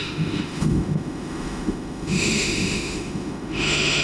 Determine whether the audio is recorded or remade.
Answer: remade